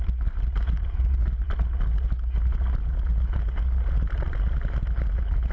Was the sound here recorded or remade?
recorded